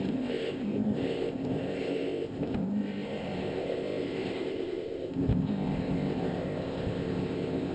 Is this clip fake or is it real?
fake